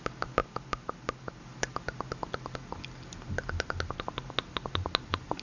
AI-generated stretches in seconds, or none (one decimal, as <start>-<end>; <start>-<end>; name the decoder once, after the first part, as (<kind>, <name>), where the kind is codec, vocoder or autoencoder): none